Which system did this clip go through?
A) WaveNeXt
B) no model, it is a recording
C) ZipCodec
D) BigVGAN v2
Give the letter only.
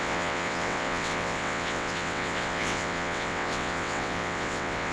A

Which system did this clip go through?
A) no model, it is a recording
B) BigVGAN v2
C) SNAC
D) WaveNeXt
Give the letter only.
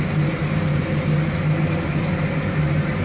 A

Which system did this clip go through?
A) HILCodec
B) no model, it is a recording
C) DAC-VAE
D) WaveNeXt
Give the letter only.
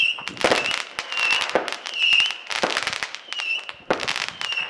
B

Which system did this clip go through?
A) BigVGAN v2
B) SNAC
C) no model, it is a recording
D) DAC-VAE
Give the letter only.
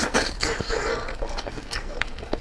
B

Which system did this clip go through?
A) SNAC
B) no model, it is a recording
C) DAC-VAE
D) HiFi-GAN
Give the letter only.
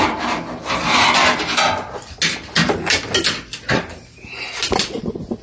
B